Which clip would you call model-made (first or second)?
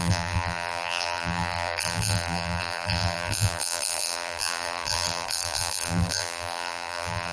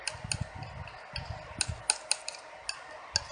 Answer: first